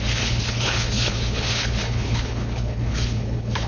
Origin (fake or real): fake